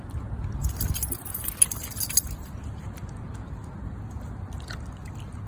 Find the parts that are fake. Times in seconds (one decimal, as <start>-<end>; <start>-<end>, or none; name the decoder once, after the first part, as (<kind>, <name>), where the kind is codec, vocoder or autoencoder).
2.4-3.0 (vocoder, BigVGAN v2)